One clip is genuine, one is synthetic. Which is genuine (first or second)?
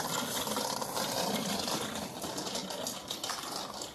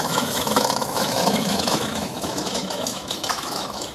first